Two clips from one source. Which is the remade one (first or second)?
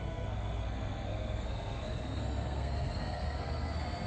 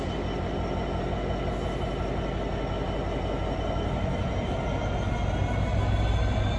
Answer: first